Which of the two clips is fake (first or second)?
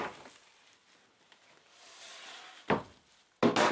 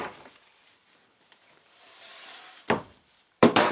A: second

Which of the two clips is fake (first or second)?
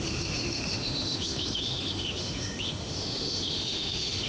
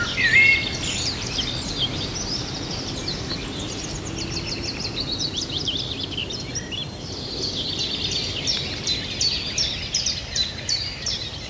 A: first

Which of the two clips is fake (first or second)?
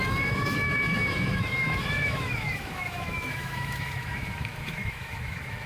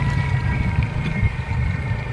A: first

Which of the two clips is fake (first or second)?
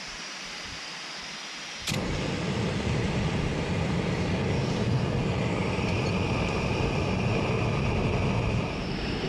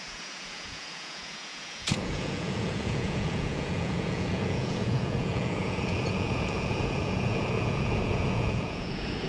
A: second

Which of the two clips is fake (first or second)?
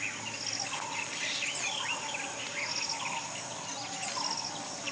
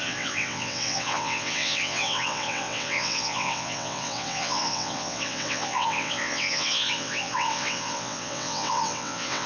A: second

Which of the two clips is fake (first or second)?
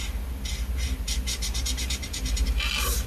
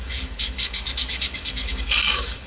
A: second